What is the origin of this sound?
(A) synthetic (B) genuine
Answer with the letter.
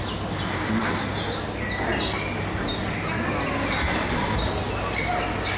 B